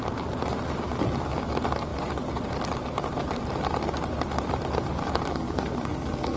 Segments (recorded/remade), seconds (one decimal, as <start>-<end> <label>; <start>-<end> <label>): 0.0-5.3 recorded; 5.3-6.4 remade